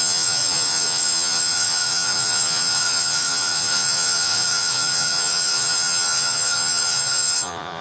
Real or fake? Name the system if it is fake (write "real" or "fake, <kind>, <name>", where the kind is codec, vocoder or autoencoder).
fake, vocoder, Vocos